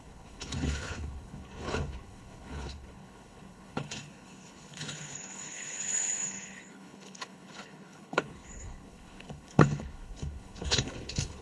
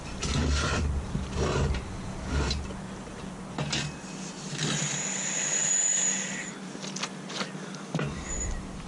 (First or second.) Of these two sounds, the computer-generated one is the first